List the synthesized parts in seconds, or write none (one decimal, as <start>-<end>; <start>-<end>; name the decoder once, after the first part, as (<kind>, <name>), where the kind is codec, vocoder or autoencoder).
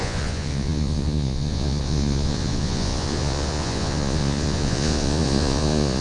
0.0-6.0 (vocoder, Vocos)